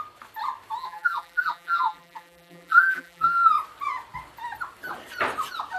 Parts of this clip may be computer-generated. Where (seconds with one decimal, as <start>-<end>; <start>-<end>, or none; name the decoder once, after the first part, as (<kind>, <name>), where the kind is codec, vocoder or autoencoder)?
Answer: 0.8-3.5 (vocoder, BigVGAN v2)